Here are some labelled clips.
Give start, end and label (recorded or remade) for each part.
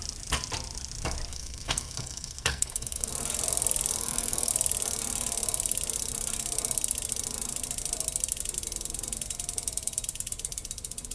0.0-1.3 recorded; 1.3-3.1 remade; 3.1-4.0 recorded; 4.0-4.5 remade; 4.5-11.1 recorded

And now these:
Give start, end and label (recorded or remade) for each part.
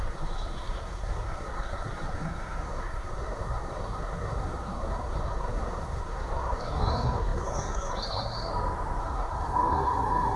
0.0-8.5 remade; 8.5-9.0 recorded; 9.0-10.4 remade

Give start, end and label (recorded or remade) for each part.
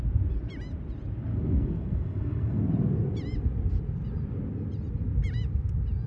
0.0-1.3 recorded; 1.3-2.6 remade; 2.6-6.1 recorded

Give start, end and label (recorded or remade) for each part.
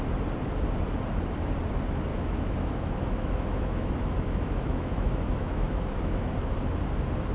0.0-2.1 recorded; 2.1-6.5 remade; 6.5-7.3 recorded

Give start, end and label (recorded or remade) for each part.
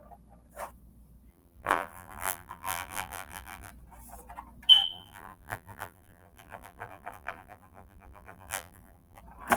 0.0-1.3 recorded; 1.3-3.7 remade; 3.7-4.8 recorded; 4.8-9.2 remade; 9.2-9.6 recorded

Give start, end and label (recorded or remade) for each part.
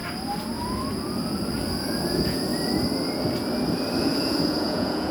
0.0-2.0 recorded; 2.0-2.5 remade; 2.5-4.0 recorded; 4.0-5.1 remade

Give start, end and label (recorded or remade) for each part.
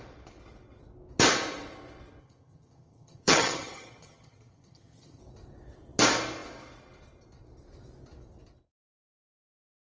0.0-2.2 recorded; 2.2-5.2 remade; 5.2-9.9 recorded